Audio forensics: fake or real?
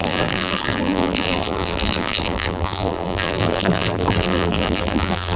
fake